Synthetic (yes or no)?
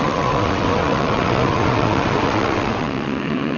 yes